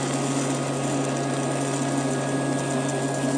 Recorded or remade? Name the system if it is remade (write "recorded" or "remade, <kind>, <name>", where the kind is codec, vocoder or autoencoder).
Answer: recorded